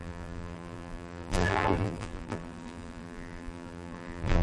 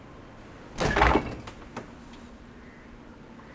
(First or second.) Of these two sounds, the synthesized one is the first